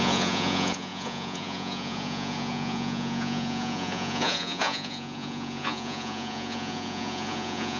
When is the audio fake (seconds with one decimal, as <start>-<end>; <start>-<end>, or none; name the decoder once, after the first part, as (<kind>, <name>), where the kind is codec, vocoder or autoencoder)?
0.0-7.8 (vocoder, Vocos)